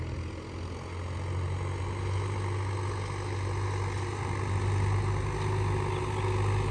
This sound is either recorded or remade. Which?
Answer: recorded